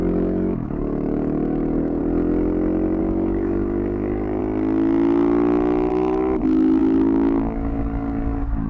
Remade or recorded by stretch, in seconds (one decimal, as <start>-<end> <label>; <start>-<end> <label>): 0.0-2.0 remade; 2.0-3.0 recorded; 3.0-4.4 remade; 4.4-5.9 recorded; 5.9-8.7 remade